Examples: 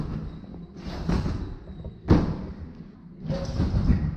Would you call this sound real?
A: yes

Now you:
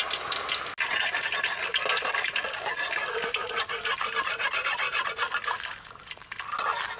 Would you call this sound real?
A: yes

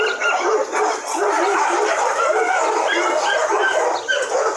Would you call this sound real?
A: yes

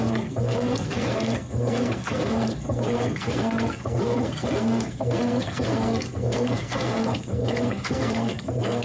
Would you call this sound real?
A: no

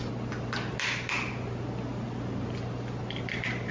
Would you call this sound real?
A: yes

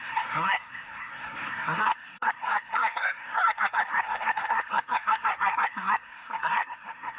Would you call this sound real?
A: no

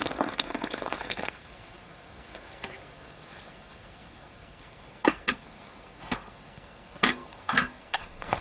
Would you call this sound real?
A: no